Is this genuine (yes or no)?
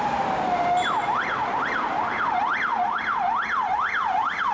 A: yes